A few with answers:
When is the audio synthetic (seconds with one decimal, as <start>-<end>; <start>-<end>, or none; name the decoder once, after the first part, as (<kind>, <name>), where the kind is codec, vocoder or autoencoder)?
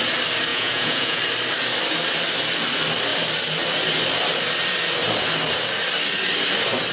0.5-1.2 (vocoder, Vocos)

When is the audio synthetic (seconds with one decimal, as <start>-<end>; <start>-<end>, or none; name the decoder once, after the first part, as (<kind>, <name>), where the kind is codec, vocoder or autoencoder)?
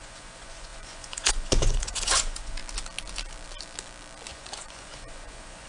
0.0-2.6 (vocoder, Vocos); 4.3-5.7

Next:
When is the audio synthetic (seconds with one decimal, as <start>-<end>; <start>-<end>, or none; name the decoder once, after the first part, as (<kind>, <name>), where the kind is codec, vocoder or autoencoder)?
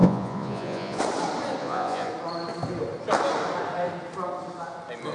0.0-1.0 (vocoder, Vocos); 1.6-2.1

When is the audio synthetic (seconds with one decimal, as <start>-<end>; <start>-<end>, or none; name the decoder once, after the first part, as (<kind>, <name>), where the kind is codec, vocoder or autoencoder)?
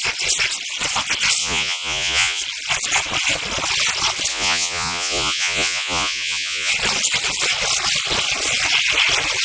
1.4-2.4 (vocoder, Vocos); 4.3-6.7